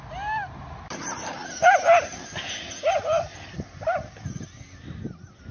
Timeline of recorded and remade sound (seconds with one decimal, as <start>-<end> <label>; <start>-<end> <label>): 0.0-5.5 recorded